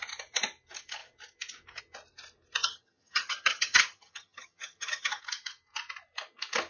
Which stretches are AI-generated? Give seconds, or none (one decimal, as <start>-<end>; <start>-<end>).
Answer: 2.6-5.2